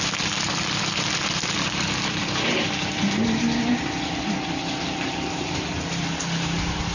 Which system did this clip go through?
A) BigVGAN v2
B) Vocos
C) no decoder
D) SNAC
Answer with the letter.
A